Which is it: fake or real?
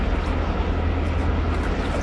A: real